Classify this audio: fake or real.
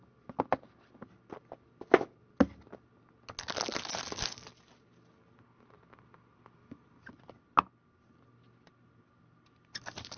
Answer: real